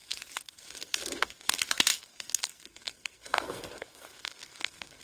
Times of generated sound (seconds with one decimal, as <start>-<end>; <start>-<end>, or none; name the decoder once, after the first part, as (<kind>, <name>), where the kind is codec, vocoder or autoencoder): 0.0-5.0 (codec, SNAC)